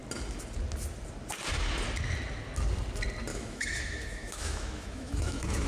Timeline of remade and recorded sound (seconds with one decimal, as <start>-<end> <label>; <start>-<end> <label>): 0.0-3.3 recorded; 3.3-5.7 remade